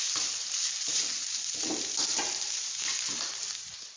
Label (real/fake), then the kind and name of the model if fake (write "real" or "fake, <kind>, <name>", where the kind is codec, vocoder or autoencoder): fake, vocoder, BigVGAN v2